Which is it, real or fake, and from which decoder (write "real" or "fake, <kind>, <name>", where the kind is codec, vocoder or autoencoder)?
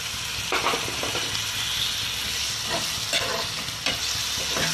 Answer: real